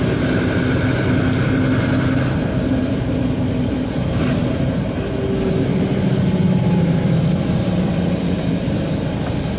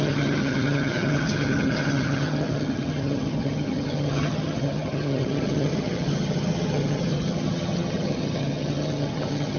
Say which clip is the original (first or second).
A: first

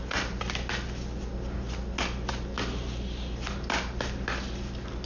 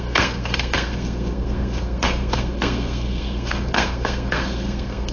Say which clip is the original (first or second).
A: first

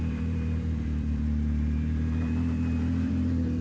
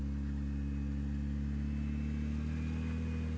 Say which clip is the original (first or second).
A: second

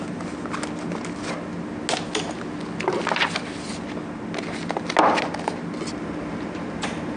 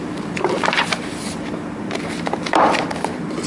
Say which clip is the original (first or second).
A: first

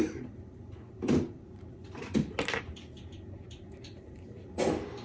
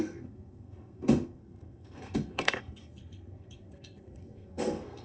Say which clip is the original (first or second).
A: first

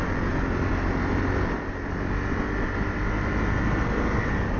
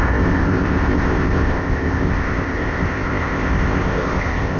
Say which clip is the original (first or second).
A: first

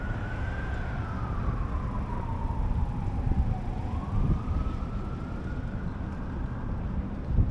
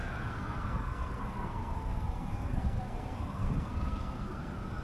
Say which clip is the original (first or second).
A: first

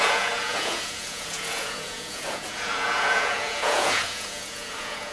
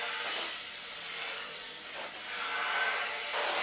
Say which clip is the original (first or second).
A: second